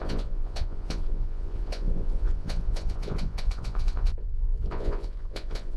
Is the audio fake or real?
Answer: fake